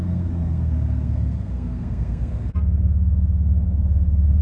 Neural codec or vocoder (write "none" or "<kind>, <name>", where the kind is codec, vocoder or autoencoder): codec, SNAC